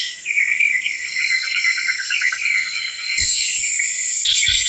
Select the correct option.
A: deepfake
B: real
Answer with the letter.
A